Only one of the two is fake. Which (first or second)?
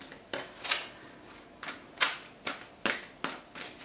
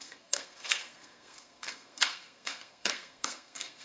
second